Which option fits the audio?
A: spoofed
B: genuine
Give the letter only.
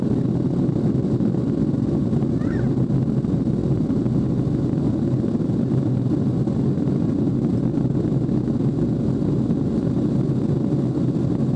B